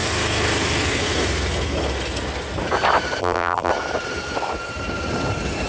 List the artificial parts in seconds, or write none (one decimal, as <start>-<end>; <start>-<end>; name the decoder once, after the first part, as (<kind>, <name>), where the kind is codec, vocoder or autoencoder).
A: 3.2-3.7 (vocoder, BigVGAN v2)